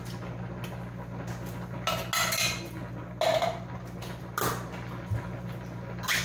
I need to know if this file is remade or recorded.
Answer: recorded